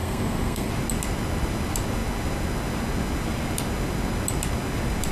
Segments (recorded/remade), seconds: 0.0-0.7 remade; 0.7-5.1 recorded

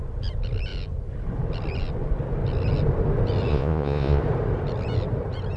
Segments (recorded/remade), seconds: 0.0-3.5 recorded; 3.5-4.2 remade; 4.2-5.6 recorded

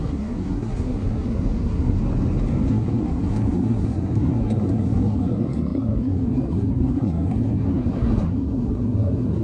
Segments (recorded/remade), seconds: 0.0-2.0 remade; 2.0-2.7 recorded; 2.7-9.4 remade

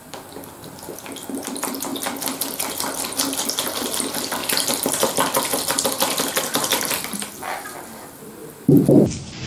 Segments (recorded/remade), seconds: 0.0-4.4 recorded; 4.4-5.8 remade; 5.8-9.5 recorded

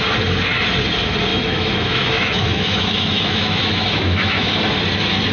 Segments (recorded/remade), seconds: 0.0-1.3 recorded; 1.3-4.5 remade; 4.5-5.3 recorded